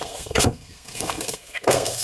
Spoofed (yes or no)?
yes